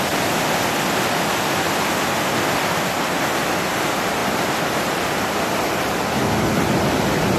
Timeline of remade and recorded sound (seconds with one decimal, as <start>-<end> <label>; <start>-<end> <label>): 0.0-4.2 recorded; 4.2-5.4 remade; 5.4-7.4 recorded